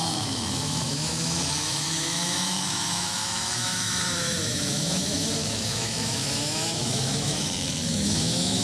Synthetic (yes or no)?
yes